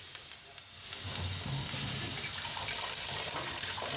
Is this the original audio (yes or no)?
yes